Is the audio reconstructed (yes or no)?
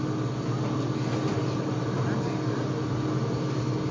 no